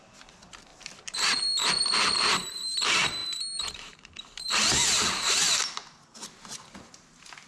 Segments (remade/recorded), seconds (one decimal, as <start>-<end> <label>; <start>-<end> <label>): 0.0-0.7 recorded; 0.7-1.7 remade; 1.7-3.2 recorded; 3.2-5.0 remade; 5.0-7.5 recorded